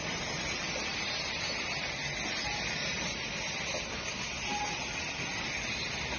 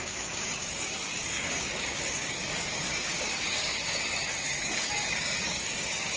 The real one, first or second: first